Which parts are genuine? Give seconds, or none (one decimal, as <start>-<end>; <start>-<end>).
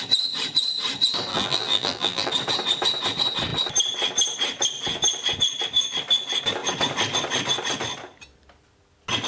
0.0-1.3; 2.3-9.3